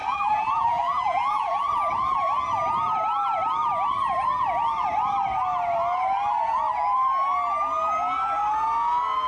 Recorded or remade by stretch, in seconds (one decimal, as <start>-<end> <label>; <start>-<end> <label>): 0.0-1.7 remade; 1.7-9.3 recorded